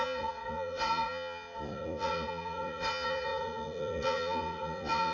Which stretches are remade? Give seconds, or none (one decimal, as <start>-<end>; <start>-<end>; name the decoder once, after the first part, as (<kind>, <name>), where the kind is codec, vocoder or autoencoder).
0.0-5.1 (vocoder, Vocos)